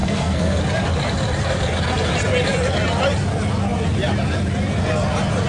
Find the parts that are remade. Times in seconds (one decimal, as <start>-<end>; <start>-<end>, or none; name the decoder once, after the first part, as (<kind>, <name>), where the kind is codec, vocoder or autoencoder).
0.0-0.6 (codec, SNAC)